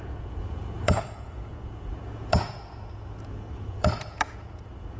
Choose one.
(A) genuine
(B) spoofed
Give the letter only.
B